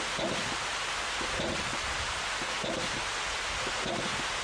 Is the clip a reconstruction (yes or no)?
no